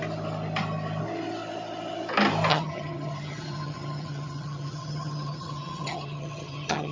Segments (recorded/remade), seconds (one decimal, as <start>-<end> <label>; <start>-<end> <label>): 0.0-2.5 recorded; 2.5-6.9 remade